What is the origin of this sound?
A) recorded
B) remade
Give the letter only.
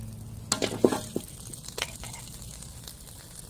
A